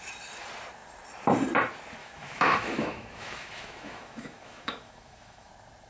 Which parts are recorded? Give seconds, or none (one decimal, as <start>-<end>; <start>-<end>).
0.0-2.0; 5.5-5.9